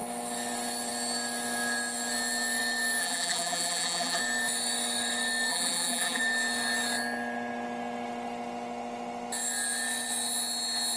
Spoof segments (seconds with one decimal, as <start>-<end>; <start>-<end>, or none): 3.0-4.2; 5.5-6.2